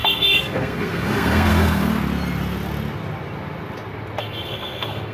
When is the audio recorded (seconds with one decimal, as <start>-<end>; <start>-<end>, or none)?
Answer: 1.9-4.2